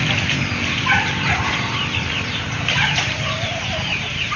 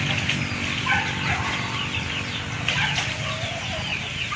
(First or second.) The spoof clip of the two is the first